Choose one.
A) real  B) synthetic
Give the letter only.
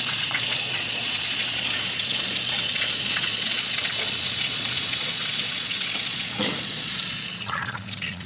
B